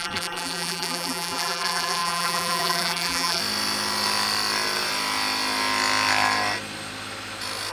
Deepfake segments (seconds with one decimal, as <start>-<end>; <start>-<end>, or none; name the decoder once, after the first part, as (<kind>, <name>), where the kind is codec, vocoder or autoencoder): 0.0-3.4 (vocoder, BigVGAN v2)